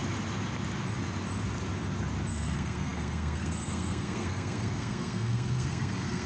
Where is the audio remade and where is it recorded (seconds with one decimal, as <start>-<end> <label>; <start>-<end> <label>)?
0.0-2.3 recorded; 2.3-6.3 remade